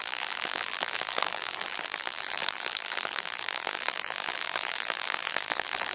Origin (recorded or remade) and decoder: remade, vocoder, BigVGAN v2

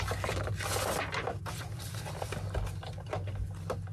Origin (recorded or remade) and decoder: recorded